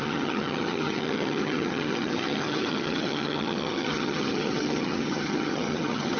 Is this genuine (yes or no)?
no